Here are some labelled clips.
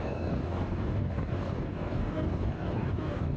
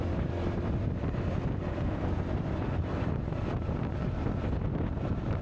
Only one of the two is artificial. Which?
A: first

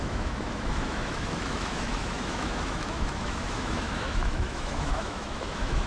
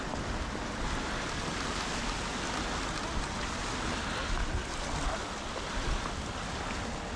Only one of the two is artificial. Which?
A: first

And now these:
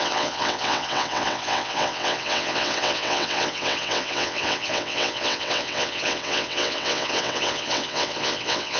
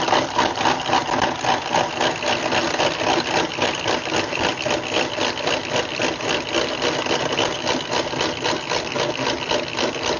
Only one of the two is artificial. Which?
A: first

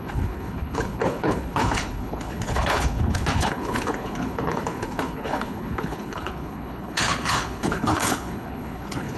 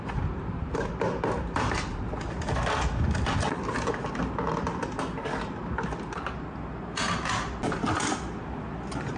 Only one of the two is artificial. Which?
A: first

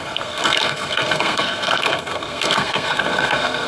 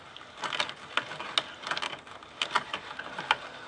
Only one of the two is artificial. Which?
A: first